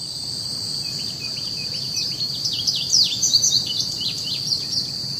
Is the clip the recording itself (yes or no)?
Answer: no